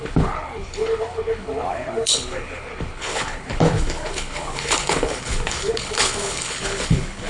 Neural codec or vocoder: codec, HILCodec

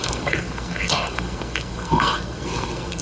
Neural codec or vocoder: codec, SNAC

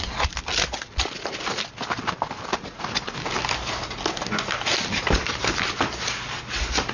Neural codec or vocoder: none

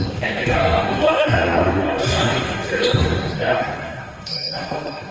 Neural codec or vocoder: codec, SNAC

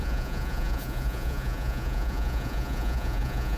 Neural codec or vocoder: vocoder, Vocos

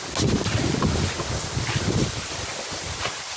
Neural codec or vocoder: none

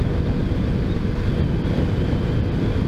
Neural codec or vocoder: none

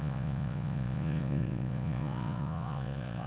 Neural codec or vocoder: vocoder, Vocos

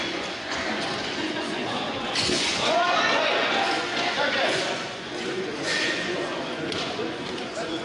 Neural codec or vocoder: vocoder, Vocos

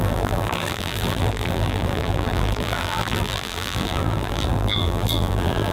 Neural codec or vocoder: vocoder, BigVGAN v2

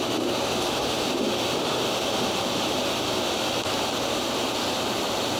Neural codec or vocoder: none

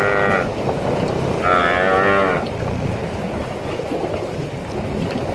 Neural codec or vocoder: none